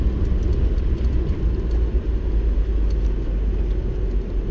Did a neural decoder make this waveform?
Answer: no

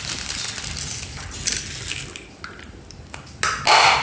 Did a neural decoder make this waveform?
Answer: no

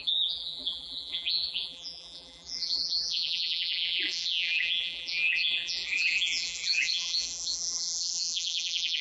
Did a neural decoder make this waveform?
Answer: yes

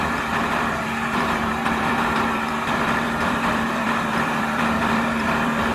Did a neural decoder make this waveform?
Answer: yes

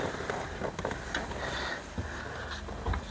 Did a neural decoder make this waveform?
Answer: no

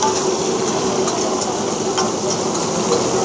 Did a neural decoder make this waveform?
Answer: no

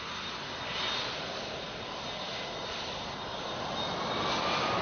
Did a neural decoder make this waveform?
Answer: no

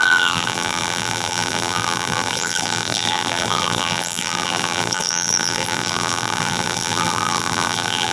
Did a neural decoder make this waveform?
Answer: yes